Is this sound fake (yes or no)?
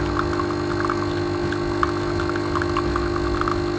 no